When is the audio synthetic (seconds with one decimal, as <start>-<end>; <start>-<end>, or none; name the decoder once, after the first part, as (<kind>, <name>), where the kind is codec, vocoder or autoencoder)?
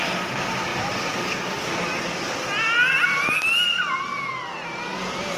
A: none